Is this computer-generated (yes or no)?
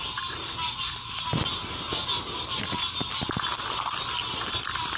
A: no